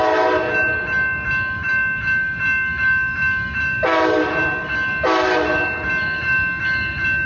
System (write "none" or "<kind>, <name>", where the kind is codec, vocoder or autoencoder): none